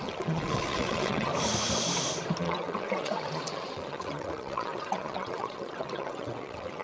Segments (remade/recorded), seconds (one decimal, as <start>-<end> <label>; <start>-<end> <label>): 0.0-1.3 remade; 1.3-2.4 recorded; 2.4-6.8 remade